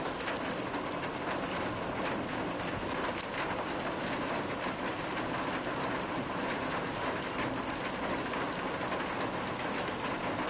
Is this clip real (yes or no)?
yes